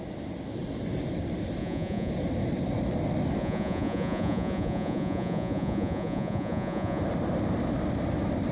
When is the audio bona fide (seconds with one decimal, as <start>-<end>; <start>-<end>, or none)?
0.0-1.6; 2.1-3.4; 7.0-8.5